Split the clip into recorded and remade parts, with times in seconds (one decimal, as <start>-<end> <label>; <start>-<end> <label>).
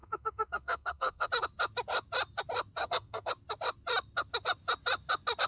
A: 0.0-1.3 remade; 1.3-2.8 recorded; 2.8-3.3 remade; 3.3-5.5 recorded